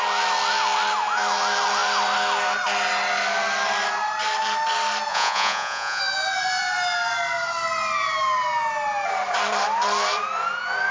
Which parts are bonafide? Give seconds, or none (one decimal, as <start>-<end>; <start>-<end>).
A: 0.0-5.1; 6.0-10.9